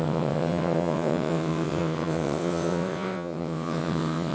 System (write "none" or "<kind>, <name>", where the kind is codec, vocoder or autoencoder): vocoder, WaveNeXt